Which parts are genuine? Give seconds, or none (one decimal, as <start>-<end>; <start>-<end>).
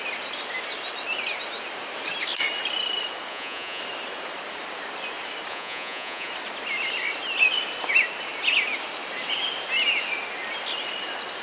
0.0-3.3; 3.8-5.5; 6.3-11.4